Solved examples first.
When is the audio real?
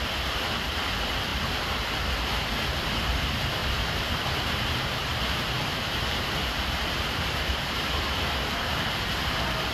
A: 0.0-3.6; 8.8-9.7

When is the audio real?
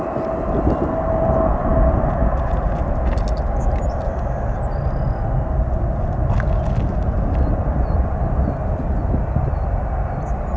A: 0.0-10.6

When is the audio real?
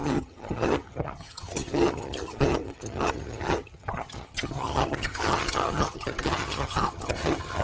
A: none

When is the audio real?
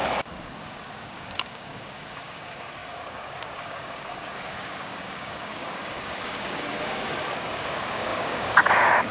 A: 0.0-0.6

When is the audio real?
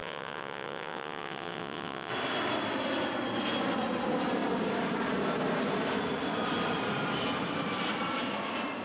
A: 2.1-8.8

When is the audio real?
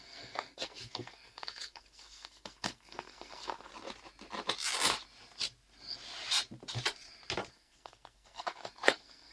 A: 3.7-7.5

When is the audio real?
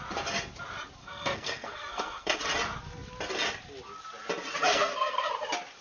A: 0.0-1.0; 2.4-4.7; 5.3-5.8